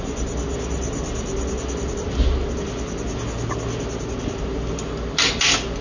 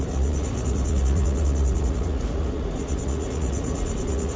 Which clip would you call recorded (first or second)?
first